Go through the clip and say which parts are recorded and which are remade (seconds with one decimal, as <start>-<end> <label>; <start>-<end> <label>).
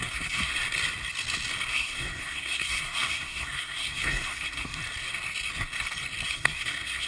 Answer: 0.0-0.5 remade; 0.5-1.7 recorded; 1.7-4.8 remade; 4.8-6.3 recorded; 6.3-7.1 remade